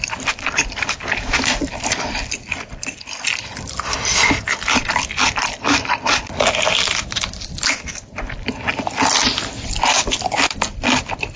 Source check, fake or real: fake